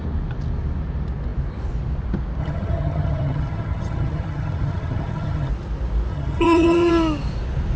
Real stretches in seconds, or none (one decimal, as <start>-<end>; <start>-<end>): 0.0-2.4; 5.5-6.1; 6.9-7.8